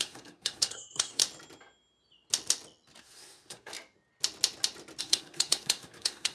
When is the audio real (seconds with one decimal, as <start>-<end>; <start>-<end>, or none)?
1.2-3.0; 3.7-5.0